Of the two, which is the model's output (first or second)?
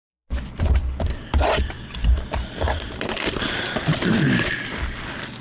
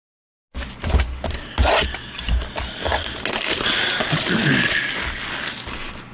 first